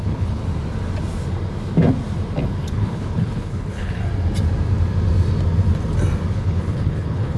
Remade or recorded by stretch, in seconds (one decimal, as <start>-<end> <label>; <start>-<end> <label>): 0.0-0.4 remade; 0.4-2.7 recorded; 2.7-4.0 remade; 4.0-6.3 recorded; 6.3-7.4 remade